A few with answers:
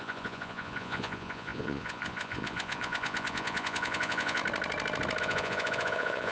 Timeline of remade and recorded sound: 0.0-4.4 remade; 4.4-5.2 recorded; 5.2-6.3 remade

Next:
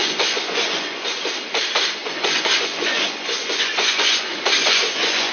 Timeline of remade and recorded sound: 0.0-1.2 remade; 1.2-2.0 recorded; 2.0-5.3 remade

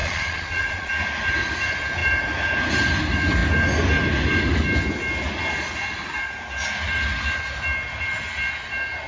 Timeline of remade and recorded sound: 0.0-0.9 remade; 0.9-9.1 recorded

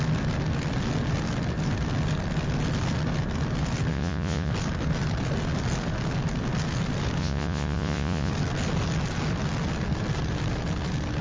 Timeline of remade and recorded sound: 0.0-3.9 recorded; 3.9-4.5 remade; 4.5-7.2 recorded; 7.2-8.3 remade; 8.3-11.2 recorded